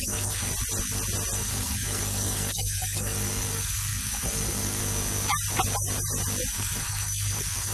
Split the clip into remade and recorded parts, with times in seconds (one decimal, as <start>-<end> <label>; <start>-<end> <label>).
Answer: 0.0-0.5 remade; 0.5-1.4 recorded; 1.4-4.8 remade; 4.8-6.5 recorded; 6.5-7.7 remade